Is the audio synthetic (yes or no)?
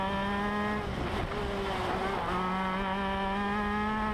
no